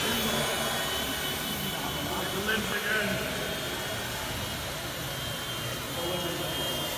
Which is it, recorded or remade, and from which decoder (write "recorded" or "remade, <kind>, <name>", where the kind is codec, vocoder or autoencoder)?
recorded